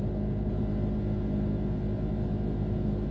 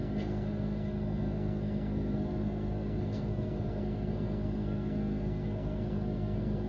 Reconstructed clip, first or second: second